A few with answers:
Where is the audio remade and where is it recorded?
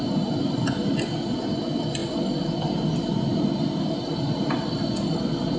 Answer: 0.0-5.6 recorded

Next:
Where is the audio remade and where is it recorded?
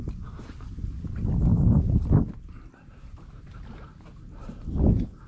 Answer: 0.0-5.3 recorded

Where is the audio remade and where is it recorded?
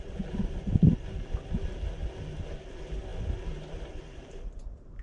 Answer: 0.0-5.0 recorded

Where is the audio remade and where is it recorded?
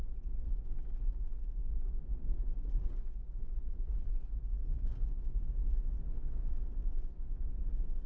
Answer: 0.0-8.1 recorded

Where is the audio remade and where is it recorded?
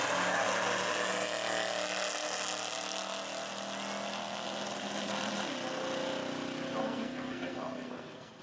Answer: 0.0-6.8 recorded; 6.8-8.4 remade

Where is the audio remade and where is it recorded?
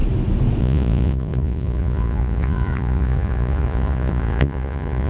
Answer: 0.0-0.6 recorded; 0.6-5.1 remade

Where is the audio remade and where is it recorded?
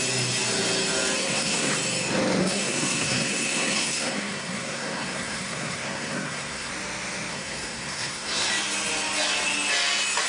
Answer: 0.0-1.2 recorded; 1.2-1.7 remade; 1.7-2.4 recorded; 2.4-6.7 remade; 6.7-7.3 recorded; 7.3-8.5 remade; 8.5-10.3 recorded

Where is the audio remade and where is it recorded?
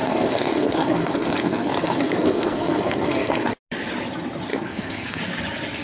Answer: 0.0-3.5 remade; 3.5-4.5 recorded; 4.5-5.2 remade; 5.2-5.8 recorded